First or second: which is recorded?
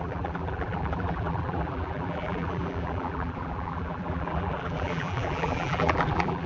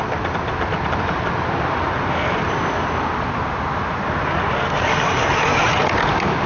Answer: second